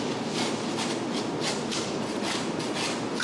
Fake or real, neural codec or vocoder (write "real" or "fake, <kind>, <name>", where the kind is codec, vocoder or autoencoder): real